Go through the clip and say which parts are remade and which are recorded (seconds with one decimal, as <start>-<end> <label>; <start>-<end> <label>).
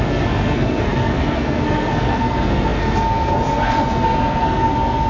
0.0-5.1 remade